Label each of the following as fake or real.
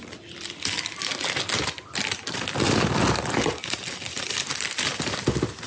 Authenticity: real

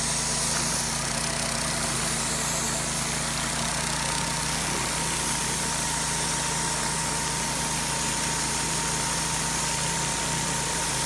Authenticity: real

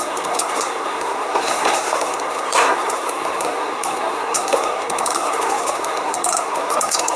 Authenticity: fake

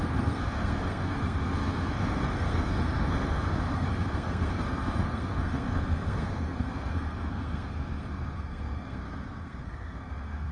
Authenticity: fake